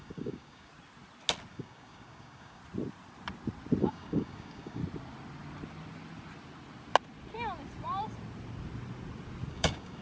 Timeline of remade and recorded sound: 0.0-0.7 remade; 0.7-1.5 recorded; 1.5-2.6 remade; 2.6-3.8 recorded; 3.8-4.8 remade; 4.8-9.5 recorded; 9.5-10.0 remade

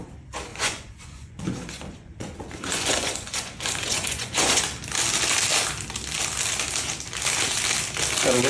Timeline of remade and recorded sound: 0.0-0.5 recorded; 0.5-4.6 remade; 4.6-8.5 recorded

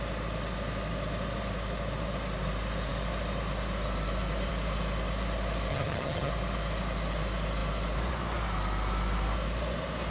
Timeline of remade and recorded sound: 0.0-5.7 recorded; 5.7-6.3 remade; 6.3-10.1 recorded

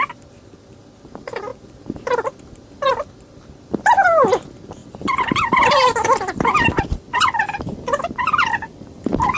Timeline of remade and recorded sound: 0.0-4.8 recorded; 4.8-6.8 remade; 6.8-9.4 recorded

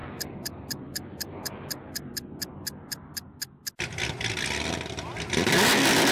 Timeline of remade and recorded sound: 0.0-6.1 recorded